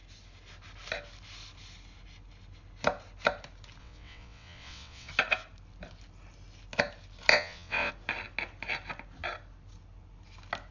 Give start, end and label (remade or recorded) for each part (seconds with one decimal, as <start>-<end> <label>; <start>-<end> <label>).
0.0-3.8 recorded; 3.8-5.1 remade; 5.1-7.3 recorded; 7.3-7.9 remade; 7.9-10.7 recorded